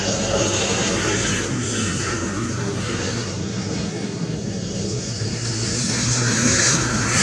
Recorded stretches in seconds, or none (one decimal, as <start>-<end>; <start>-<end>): none